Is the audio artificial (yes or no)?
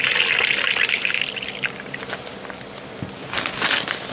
no